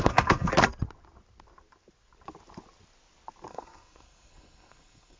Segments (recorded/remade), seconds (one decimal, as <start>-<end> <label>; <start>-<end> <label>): 0.0-0.5 remade; 0.5-3.5 recorded; 3.5-5.2 remade